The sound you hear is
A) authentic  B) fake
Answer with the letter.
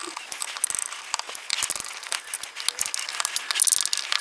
A